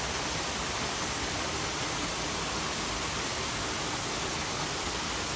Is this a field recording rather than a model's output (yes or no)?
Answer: yes